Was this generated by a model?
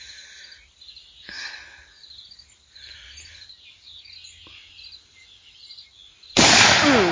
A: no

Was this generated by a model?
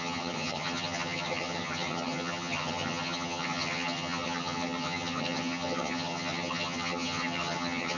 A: yes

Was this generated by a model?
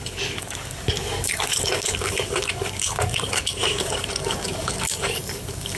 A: yes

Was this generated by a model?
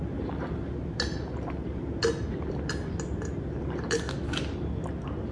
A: no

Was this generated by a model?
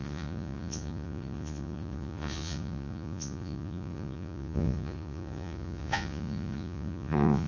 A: yes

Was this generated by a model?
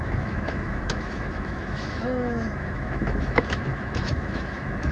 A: yes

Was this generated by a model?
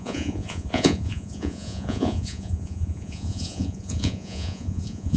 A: yes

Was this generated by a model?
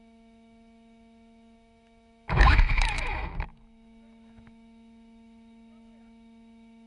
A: yes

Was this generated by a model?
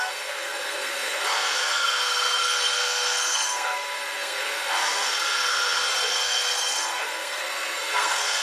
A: yes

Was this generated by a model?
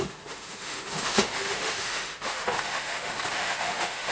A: yes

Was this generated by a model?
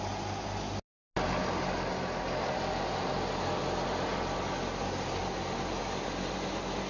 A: no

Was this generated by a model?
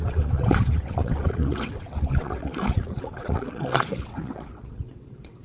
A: yes